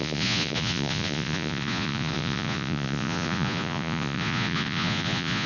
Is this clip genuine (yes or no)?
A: no